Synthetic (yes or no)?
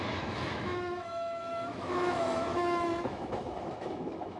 yes